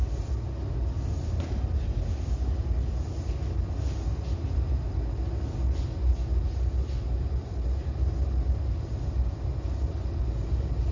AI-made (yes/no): no